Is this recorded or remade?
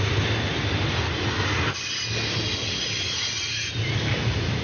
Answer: recorded